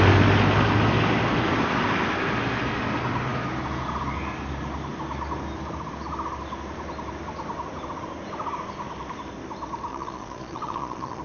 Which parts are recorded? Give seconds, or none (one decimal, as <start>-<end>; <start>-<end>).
0.0-9.9